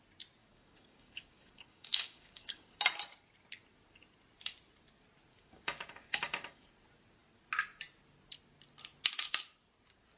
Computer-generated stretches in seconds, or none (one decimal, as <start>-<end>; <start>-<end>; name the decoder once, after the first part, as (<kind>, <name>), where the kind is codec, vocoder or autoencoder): 0.4-2.8 (codec, DAC); 5.3-6.7